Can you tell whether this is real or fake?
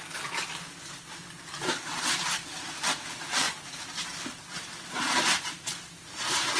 real